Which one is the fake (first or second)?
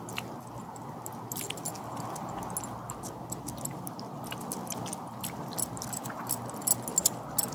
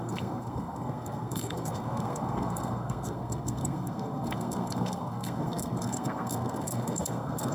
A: second